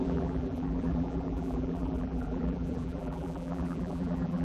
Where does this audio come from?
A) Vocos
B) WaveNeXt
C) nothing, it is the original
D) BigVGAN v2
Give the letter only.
D